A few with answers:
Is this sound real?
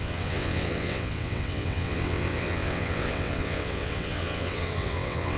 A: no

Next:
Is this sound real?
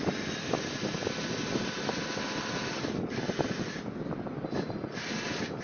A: yes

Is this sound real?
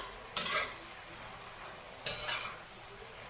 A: yes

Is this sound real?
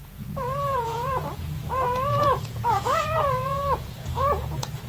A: no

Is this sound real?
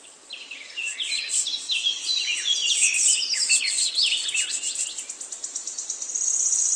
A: yes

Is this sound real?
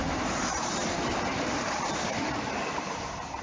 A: yes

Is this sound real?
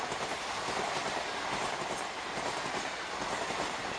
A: yes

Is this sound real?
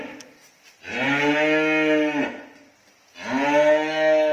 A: yes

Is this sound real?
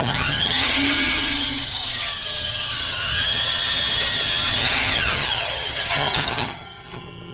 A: no